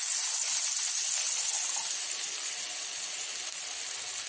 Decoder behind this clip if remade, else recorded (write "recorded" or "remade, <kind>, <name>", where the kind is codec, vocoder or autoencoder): recorded